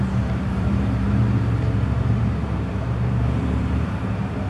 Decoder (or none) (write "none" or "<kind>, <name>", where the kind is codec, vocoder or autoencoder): vocoder, BigVGAN v2